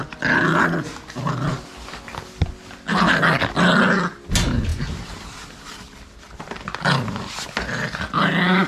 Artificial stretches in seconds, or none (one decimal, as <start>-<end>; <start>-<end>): none